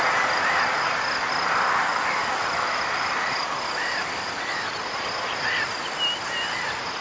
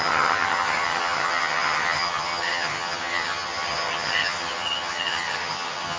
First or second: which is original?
first